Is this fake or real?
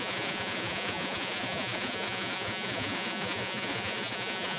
fake